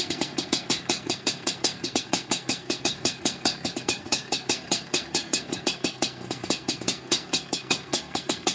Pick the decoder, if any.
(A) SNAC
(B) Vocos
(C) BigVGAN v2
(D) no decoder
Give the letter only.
A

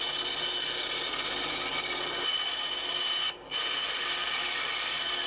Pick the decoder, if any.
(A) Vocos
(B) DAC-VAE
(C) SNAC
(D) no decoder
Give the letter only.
D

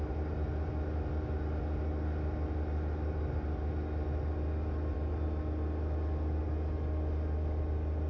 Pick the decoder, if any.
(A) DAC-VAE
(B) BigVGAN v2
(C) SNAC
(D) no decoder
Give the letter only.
D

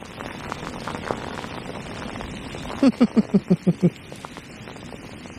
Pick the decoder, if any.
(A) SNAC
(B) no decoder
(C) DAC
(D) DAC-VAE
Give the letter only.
B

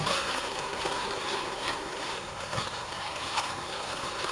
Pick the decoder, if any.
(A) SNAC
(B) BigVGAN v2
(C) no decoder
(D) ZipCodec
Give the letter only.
A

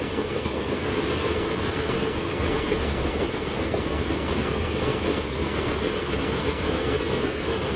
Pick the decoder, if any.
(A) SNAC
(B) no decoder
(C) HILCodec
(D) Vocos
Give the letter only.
A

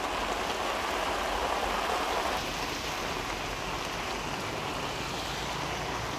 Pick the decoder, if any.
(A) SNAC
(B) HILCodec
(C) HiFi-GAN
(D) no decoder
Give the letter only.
D